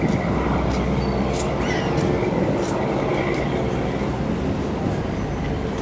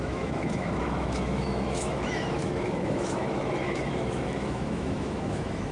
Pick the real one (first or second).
first